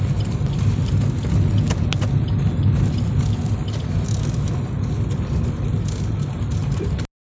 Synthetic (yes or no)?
no